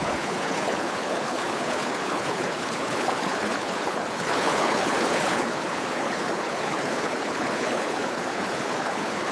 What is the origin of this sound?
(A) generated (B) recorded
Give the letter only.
A